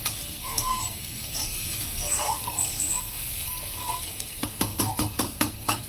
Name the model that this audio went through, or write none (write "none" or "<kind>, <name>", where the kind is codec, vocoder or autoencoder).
codec, SNAC